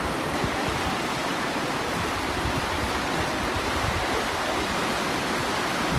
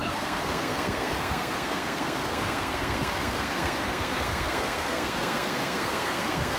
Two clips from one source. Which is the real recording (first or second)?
first